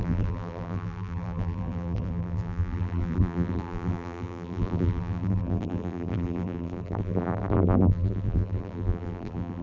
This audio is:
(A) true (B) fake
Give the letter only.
B